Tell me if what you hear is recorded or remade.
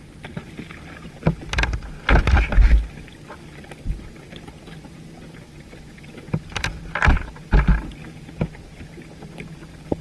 recorded